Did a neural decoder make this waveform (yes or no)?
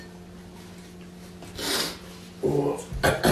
no